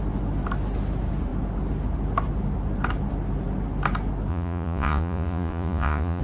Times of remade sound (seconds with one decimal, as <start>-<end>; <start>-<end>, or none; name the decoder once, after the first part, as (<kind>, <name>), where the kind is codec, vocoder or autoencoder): 4.3-6.2 (vocoder, Vocos)